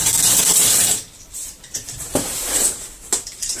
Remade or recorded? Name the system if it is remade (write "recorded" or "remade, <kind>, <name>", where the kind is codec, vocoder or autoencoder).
remade, vocoder, BigVGAN v2